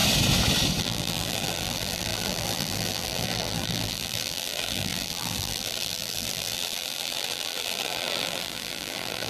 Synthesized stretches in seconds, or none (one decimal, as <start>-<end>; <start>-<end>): 0.8-9.3